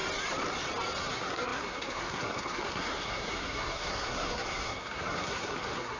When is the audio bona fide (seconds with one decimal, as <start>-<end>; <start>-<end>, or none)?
0.0-1.1